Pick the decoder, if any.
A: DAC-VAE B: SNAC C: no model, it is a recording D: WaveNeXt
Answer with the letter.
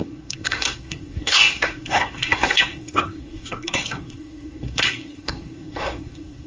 B